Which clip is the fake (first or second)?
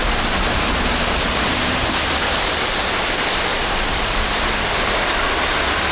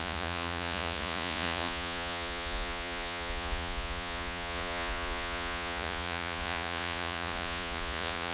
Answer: second